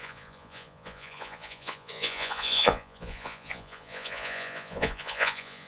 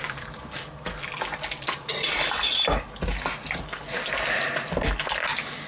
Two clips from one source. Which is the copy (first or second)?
first